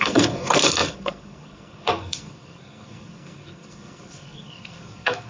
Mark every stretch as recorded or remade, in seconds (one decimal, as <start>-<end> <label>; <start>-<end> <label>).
0.0-5.3 remade